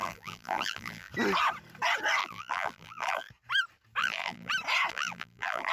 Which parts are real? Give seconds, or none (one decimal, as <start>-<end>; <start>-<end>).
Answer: 1.1-2.2; 3.3-4.0; 4.5-4.9